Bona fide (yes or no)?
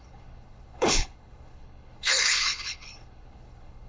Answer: no